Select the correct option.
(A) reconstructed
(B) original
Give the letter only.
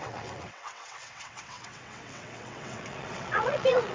A